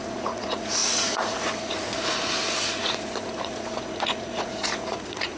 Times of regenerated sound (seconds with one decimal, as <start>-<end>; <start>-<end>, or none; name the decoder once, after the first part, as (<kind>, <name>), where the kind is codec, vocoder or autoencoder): 0.0-5.4 (vocoder, Vocos)